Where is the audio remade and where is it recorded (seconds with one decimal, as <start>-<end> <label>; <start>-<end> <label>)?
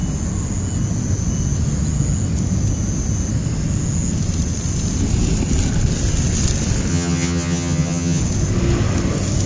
0.0-6.9 recorded; 6.9-8.2 remade; 8.2-9.5 recorded